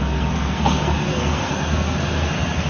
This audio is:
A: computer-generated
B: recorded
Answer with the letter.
A